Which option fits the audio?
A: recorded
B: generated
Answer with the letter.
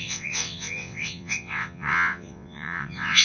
B